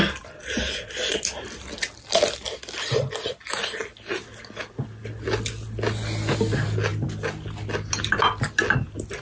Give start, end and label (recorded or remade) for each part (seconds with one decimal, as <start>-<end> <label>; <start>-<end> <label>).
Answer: 0.0-9.2 recorded